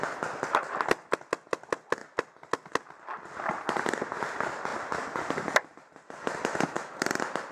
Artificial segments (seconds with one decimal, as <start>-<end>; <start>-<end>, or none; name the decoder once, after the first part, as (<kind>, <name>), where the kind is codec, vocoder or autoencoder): none